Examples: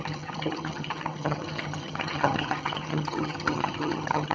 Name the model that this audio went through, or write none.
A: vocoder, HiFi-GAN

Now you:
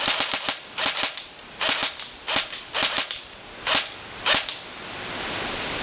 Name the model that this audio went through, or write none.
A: none